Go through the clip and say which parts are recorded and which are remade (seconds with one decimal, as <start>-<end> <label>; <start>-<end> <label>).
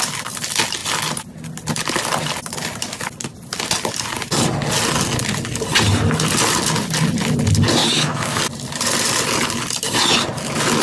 0.0-7.8 recorded; 7.8-8.4 remade; 8.4-10.8 recorded